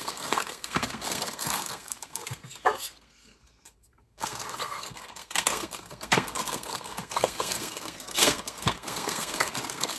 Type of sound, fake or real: fake